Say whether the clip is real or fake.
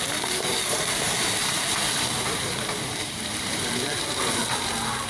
fake